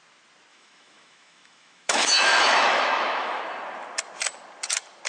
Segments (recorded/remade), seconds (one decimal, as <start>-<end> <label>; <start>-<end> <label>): 0.0-0.5 recorded; 0.5-3.4 remade; 3.4-5.1 recorded

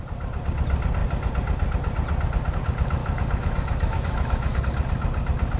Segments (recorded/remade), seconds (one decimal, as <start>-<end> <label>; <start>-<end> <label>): 0.0-3.0 recorded; 3.0-4.6 remade; 4.6-5.6 recorded